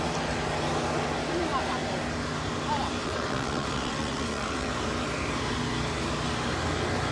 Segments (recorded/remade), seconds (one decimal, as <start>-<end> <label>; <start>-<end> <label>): 0.0-3.0 recorded; 3.0-4.7 remade; 4.7-7.1 recorded